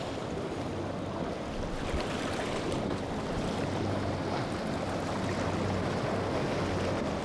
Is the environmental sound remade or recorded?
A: recorded